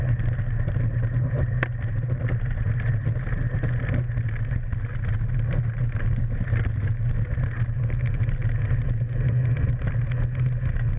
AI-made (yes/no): no